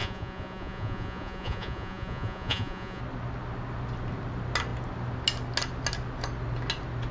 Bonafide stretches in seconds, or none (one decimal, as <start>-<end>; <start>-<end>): 3.0-7.1

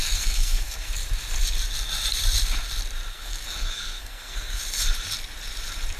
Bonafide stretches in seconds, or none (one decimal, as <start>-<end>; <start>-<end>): 0.9-3.1; 4.6-6.0